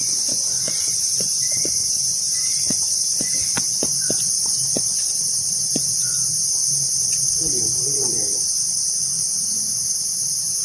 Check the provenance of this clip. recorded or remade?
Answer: remade